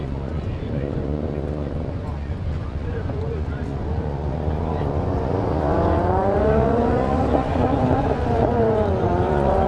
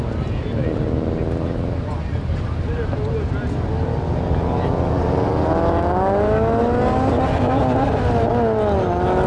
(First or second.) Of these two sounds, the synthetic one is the first